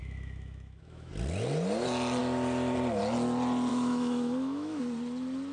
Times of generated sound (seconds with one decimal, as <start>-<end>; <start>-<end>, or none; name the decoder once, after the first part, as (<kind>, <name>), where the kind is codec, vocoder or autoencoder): 0.0-1.1 (autoencoder, DAC-VAE); 3.7-4.8